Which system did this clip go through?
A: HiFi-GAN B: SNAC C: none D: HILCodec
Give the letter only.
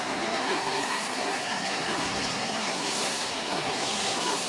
B